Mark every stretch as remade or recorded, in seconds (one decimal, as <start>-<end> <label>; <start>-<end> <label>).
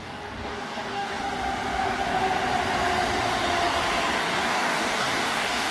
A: 0.0-1.2 remade; 1.2-4.2 recorded; 4.2-5.7 remade